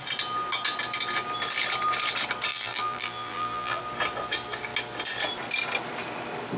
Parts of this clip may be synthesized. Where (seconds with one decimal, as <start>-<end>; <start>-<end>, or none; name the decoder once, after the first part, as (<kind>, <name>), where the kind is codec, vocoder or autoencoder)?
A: 2.5-3.8 (vocoder, BigVGAN v2)